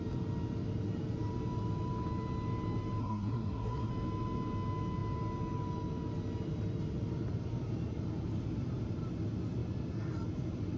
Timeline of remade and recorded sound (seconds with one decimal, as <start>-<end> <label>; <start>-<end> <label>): 0.0-3.0 recorded; 3.0-3.9 remade; 3.9-10.8 recorded